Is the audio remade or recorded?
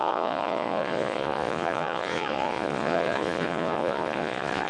remade